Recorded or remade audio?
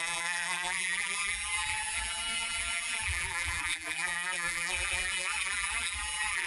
remade